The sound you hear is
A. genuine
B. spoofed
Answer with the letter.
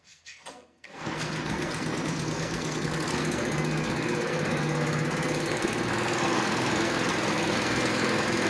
B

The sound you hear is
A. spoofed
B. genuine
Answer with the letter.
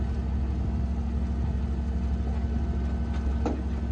B